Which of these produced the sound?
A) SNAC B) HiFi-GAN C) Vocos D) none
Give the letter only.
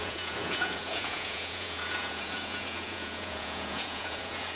C